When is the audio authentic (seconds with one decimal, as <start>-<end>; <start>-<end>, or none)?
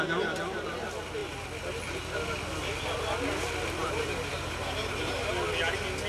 0.0-3.8; 5.3-6.1